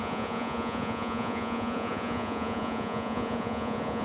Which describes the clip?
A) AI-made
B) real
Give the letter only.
A